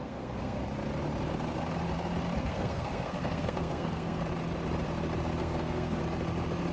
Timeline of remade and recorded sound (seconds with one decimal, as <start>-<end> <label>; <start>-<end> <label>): 0.0-0.6 remade; 0.6-2.4 recorded; 2.4-4.2 remade; 4.2-5.4 recorded; 5.4-6.0 remade; 6.0-6.7 recorded